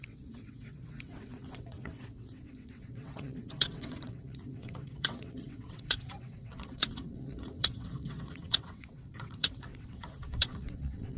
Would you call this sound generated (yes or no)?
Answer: yes